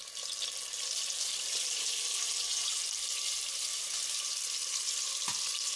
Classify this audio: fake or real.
real